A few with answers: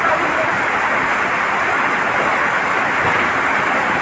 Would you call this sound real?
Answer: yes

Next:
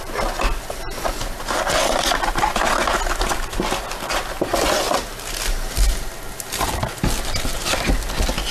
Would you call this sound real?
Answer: yes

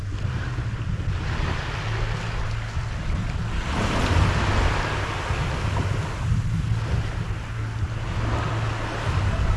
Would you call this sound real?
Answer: yes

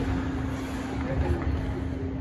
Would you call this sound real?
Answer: yes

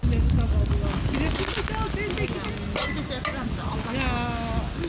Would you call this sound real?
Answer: yes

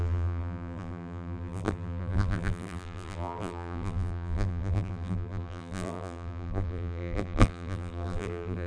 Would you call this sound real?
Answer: no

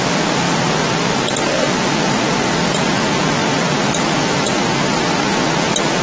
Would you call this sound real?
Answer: yes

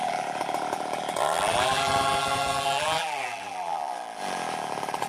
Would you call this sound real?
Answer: no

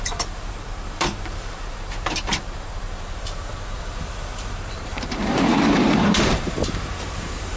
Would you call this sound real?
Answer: no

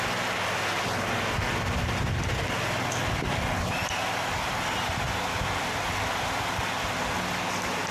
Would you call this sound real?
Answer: yes